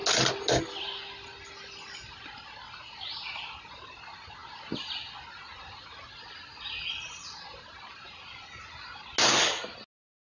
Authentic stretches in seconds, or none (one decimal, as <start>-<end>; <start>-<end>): 0.0-10.3